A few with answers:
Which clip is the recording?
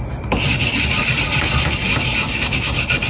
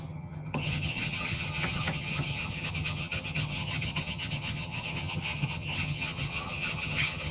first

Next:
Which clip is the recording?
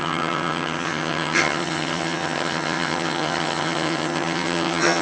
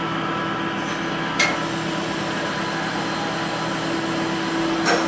second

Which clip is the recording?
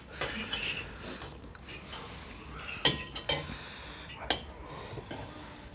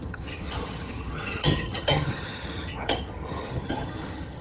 first